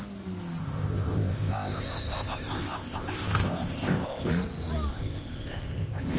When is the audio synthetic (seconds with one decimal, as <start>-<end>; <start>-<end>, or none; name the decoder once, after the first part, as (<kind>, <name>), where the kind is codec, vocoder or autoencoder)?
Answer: 0.6-4.3 (codec, ZipCodec); 4.9-6.2

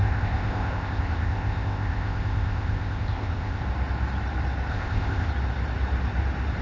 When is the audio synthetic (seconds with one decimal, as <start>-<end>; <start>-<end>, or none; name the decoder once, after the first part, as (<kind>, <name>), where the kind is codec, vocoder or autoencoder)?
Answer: 0.0-3.6 (codec, ZipCodec); 4.7-5.3

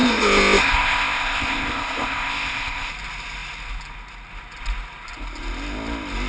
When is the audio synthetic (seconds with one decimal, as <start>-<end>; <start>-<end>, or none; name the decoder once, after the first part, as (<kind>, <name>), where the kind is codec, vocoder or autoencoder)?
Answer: 0.0-2.9 (codec, ZipCodec)

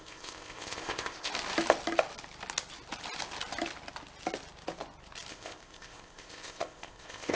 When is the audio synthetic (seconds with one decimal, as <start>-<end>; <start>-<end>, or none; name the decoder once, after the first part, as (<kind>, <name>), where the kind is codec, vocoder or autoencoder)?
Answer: 0.0-1.3 (codec, ZipCodec); 5.3-7.4

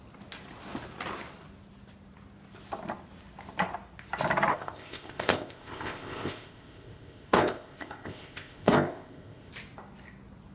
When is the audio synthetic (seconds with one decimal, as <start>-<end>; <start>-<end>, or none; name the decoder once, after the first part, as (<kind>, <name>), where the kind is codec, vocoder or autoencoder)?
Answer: 4.5-9.5 (codec, ZipCodec)

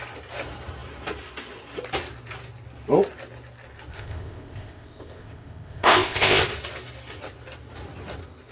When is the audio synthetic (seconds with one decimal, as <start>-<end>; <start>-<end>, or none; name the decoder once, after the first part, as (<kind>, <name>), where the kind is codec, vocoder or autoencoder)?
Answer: 3.9-6.4 (codec, ZipCodec)